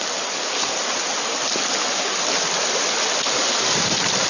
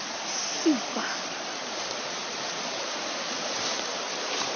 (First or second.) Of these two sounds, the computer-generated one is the second